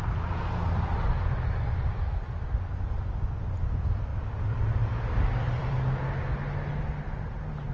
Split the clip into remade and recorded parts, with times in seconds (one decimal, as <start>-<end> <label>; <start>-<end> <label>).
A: 0.0-4.1 recorded; 4.1-6.0 remade; 6.0-7.7 recorded